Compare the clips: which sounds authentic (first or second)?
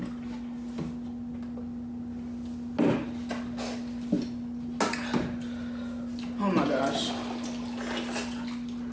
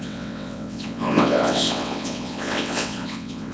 first